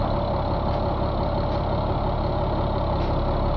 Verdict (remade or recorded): recorded